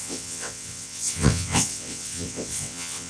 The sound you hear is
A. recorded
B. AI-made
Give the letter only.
B